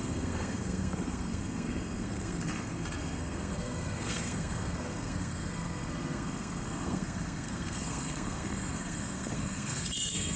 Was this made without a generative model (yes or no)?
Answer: no